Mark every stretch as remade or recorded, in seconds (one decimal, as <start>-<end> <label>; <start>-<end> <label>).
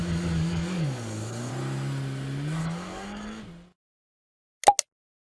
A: 0.0-1.5 remade; 1.5-2.6 recorded; 2.6-3.4 remade; 3.4-5.4 recorded